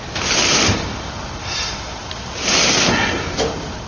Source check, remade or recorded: recorded